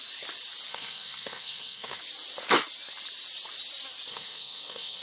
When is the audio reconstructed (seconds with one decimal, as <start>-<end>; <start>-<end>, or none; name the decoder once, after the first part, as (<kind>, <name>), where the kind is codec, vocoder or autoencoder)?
0.7-2.0 (codec, SNAC); 4.1-5.0